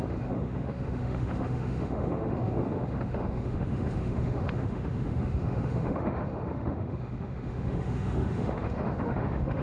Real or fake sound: fake